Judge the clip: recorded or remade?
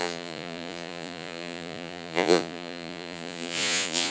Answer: remade